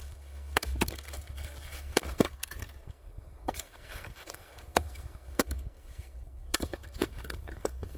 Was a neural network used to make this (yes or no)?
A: yes